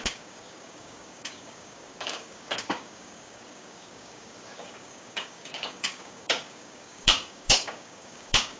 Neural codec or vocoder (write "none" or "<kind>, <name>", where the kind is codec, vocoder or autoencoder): codec, DAC